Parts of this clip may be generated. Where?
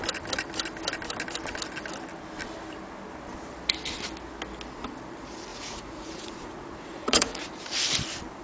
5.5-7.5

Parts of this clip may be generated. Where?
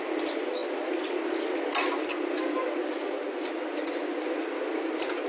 none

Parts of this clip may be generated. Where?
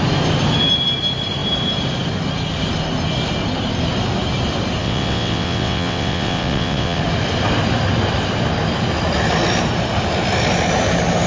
4.8-7.0